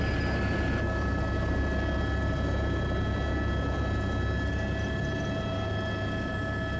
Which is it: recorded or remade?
recorded